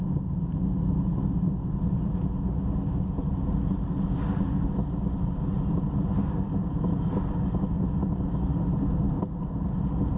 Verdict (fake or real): real